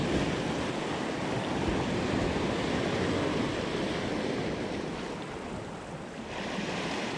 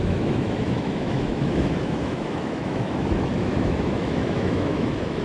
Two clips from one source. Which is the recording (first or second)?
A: first